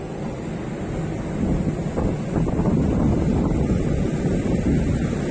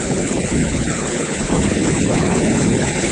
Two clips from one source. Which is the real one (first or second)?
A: first